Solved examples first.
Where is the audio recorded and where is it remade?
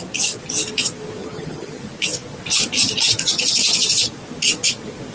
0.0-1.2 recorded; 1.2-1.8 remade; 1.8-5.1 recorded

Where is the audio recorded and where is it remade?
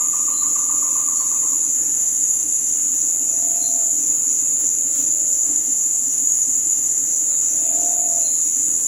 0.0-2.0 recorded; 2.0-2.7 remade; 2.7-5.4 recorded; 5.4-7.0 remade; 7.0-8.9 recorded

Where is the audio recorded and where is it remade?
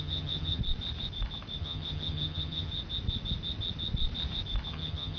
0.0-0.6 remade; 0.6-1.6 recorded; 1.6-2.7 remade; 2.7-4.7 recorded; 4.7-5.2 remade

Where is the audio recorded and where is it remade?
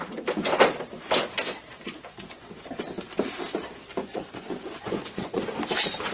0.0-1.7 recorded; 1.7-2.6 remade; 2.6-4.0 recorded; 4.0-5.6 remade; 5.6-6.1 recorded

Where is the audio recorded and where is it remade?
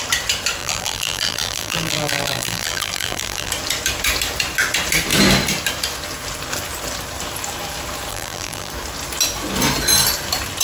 0.0-0.6 recorded; 0.6-3.5 remade; 3.5-8.1 recorded; 8.1-8.7 remade; 8.7-10.6 recorded